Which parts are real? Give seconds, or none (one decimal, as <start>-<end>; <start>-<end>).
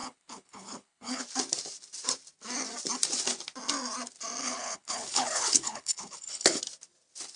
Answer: 1.2-4.4; 6.6-7.4